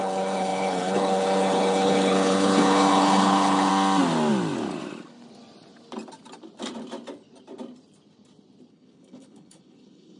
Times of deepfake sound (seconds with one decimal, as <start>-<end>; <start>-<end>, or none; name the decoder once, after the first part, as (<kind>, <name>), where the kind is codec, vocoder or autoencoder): 0.0-3.7 (codec, HILCodec); 8.7-10.2